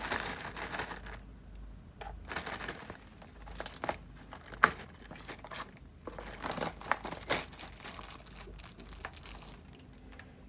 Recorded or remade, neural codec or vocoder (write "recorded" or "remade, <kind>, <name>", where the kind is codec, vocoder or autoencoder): recorded